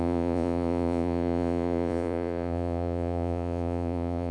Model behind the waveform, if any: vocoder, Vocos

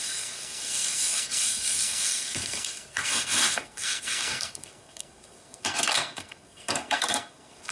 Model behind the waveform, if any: codec, SNAC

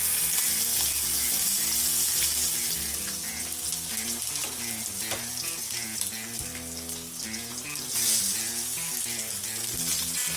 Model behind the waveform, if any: none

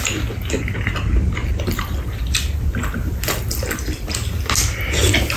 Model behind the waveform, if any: none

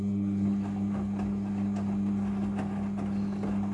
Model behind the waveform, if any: none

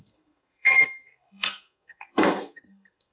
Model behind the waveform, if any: codec, SNAC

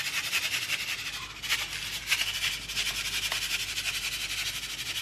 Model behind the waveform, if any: none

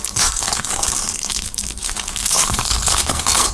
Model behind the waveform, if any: codec, SNAC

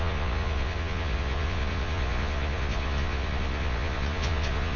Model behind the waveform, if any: vocoder, Vocos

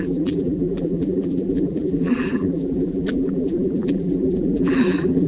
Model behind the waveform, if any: vocoder, BigVGAN v2